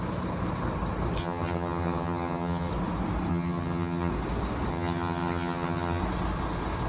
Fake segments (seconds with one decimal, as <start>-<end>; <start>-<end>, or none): 1.2-2.7; 3.3-4.1; 4.7-6.0